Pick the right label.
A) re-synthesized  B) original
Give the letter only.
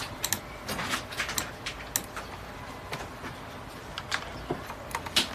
B